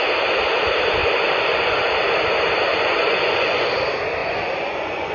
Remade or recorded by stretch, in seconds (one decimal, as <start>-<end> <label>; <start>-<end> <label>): 0.0-1.0 recorded; 1.0-1.9 remade; 1.9-2.7 recorded; 2.7-3.7 remade; 3.7-4.2 recorded; 4.2-5.1 remade